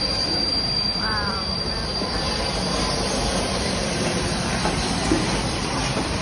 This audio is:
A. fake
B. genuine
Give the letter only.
A